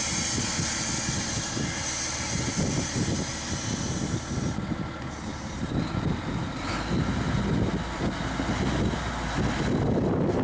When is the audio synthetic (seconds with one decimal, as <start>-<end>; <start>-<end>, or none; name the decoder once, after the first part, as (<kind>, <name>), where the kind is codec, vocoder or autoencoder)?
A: none